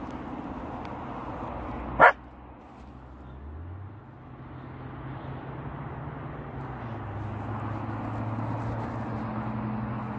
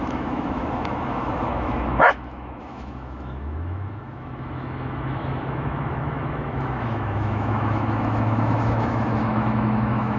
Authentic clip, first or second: first